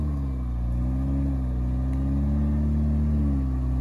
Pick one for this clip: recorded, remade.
recorded